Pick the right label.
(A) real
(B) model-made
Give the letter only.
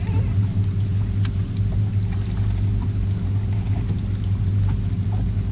A